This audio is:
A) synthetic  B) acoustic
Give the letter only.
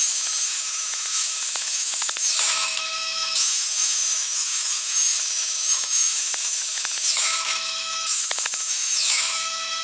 A